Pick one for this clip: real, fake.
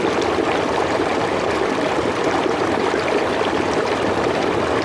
real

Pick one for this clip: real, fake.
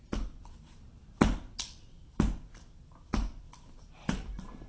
real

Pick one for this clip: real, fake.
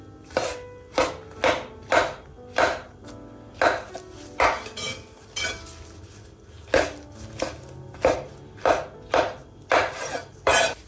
real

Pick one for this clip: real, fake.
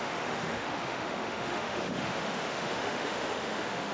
fake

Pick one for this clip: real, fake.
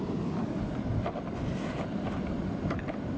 real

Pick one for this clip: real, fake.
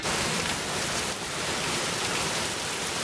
fake